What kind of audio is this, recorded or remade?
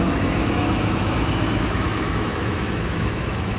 remade